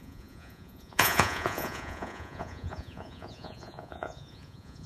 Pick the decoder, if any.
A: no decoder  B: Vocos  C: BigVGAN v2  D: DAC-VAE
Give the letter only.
B